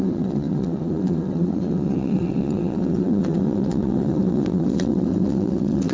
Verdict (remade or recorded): remade